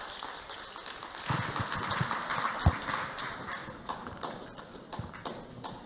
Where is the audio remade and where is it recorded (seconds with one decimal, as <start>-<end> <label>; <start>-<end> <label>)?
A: 0.0-5.9 recorded